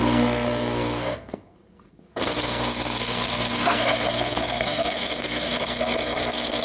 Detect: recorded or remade remade